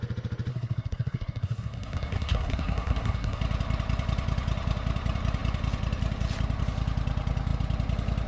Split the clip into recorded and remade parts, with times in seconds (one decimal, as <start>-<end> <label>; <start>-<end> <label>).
0.0-0.5 recorded; 0.5-3.4 remade; 3.4-8.3 recorded